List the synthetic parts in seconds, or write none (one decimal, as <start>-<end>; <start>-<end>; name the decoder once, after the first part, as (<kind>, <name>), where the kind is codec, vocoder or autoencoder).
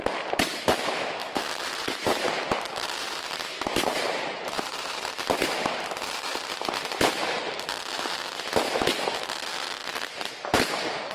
1.2-2.3 (vocoder, BigVGAN v2); 3.0-5.0; 9.8-10.3